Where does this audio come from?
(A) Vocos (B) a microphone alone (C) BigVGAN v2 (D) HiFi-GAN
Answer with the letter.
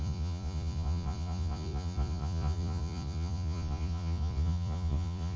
A